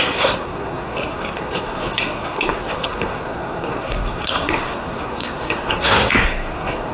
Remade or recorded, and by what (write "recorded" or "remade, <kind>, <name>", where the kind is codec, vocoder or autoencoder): remade, codec, SNAC